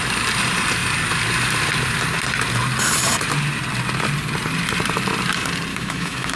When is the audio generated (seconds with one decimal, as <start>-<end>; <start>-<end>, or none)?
5.7-6.4